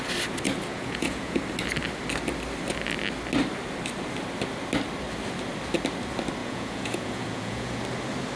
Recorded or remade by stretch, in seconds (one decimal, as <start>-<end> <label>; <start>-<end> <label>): 0.0-0.7 recorded; 0.7-1.4 remade; 1.4-6.4 recorded; 6.4-7.8 remade; 7.8-8.4 recorded